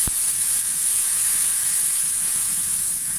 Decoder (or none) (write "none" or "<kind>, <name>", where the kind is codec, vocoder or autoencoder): autoencoder, DAC-VAE